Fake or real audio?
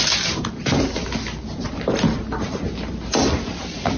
real